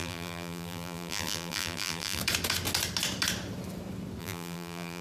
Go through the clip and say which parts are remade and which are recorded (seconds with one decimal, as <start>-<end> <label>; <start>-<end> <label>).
0.0-2.2 remade; 2.2-4.2 recorded; 4.2-5.0 remade